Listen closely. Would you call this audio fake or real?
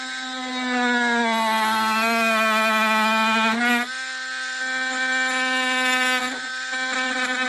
real